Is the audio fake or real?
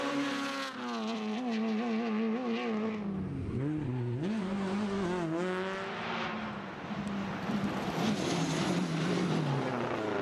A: real